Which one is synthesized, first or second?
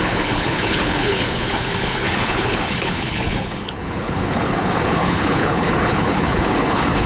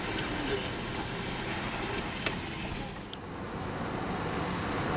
first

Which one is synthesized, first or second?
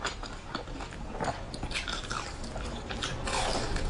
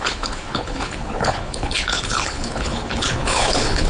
second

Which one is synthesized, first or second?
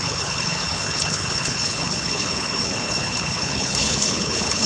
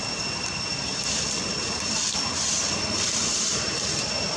first